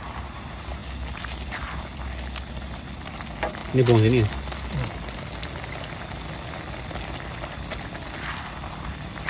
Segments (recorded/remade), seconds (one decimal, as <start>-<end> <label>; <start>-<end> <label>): 0.0-9.3 recorded

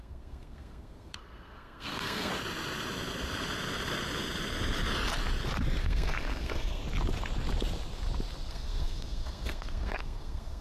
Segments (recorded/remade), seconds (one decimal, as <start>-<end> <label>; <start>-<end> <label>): 0.0-2.3 remade; 2.3-5.8 recorded; 5.8-6.8 remade; 6.8-8.5 recorded; 8.5-10.6 remade